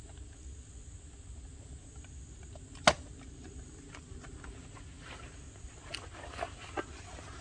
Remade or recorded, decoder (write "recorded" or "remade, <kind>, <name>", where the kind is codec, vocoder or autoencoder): recorded